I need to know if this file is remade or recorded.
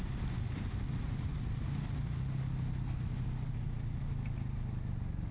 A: recorded